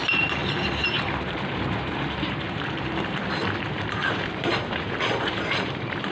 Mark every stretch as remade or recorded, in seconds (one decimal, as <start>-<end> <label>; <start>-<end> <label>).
0.0-6.1 remade